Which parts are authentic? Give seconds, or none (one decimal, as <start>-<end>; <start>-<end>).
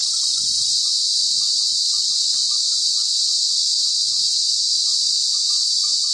0.0-6.1